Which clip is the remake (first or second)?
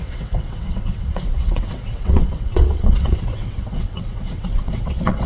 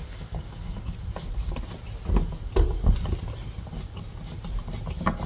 first